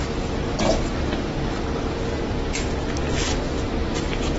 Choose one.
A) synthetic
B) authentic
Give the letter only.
B